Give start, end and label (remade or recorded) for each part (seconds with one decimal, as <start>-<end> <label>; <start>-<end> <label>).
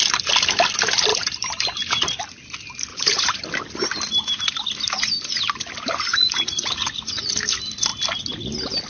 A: 0.0-2.9 recorded; 2.9-3.4 remade; 3.4-6.1 recorded; 6.1-7.3 remade; 7.3-8.9 recorded